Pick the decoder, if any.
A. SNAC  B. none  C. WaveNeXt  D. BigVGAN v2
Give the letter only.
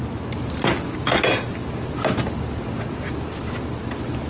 B